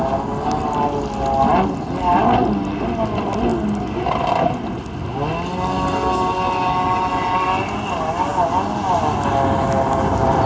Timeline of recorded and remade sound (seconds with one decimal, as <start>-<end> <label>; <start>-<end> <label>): 0.0-10.5 recorded